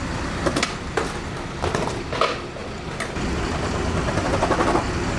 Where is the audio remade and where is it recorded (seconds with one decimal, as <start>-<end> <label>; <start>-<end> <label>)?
0.0-5.2 recorded